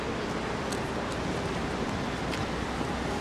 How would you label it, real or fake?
real